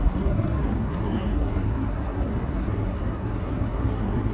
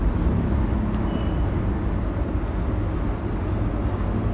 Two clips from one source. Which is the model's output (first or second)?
first